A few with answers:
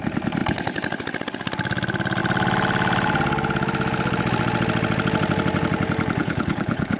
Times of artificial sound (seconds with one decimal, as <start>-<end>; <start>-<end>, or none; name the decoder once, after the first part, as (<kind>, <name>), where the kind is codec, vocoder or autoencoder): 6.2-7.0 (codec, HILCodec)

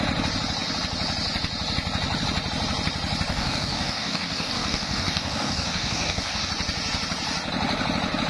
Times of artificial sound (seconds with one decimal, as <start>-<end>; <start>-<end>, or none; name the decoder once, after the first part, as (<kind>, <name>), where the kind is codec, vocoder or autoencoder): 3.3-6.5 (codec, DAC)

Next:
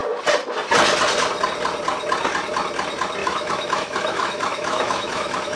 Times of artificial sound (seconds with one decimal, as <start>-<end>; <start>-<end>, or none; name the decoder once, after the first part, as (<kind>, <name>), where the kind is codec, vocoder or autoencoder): 3.2-5.6 (autoencoder, DAC-VAE)

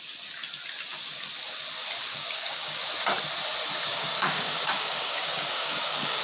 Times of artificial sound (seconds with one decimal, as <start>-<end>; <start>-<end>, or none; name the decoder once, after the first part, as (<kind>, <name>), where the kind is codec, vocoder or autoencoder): 2.1-2.8 (codec, DAC); 3.9-6.2

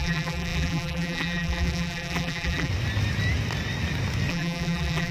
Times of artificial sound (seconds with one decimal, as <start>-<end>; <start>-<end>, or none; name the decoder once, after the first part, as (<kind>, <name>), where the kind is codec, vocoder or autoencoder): 0.0-2.7 (vocoder, BigVGAN v2); 4.3-5.1